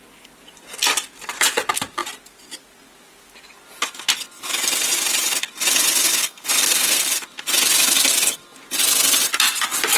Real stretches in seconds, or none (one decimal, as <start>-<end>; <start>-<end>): 0.0-6.2; 7.1-10.0